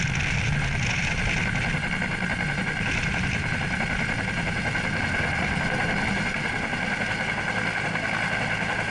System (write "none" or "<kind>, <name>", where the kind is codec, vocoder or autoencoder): none